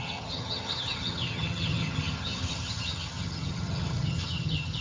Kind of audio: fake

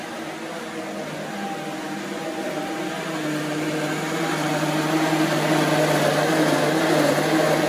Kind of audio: real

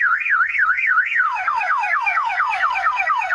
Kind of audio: fake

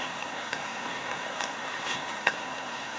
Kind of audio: fake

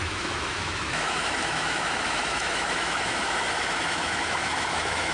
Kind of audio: fake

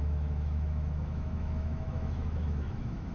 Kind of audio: fake